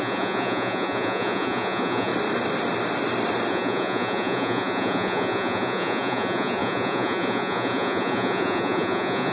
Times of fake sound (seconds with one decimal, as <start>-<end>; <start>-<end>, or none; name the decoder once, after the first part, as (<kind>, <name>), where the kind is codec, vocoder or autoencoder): 0.0-2.1 (vocoder, Vocos); 3.5-9.3